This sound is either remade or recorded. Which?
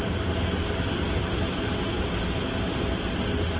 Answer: recorded